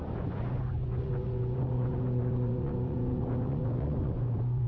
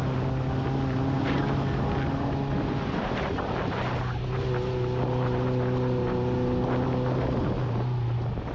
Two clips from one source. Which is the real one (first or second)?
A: second